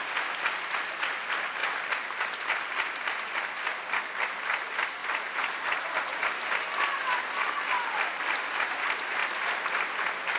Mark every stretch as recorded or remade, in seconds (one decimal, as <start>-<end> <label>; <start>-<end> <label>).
0.0-5.0 recorded; 5.0-6.0 remade; 6.0-9.2 recorded; 9.2-9.9 remade; 9.9-10.4 recorded